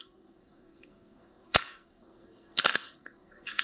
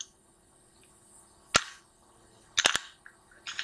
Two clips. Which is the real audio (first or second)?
second